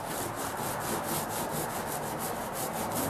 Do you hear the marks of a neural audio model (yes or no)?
no